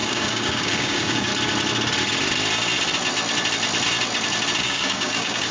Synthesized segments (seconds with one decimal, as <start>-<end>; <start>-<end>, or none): 0.0-1.3; 4.6-5.5